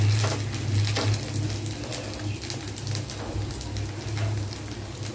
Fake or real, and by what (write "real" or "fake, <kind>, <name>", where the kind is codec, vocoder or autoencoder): real